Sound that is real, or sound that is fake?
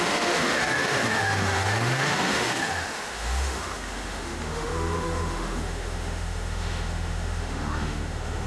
fake